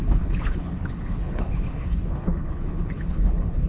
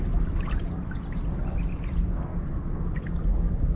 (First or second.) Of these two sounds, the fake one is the first